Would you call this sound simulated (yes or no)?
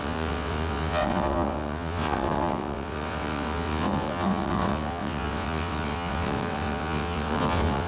yes